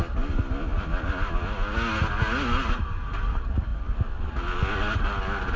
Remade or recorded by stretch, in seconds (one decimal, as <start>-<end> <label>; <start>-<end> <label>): 0.0-5.6 recorded